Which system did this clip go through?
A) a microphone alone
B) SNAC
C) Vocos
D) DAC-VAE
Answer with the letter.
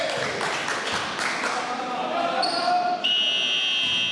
A